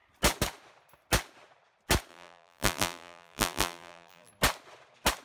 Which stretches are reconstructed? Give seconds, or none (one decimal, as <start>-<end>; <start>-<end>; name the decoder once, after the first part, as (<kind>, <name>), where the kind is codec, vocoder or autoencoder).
2.1-4.3 (vocoder, BigVGAN v2)